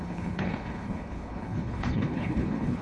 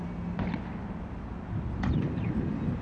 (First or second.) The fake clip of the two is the first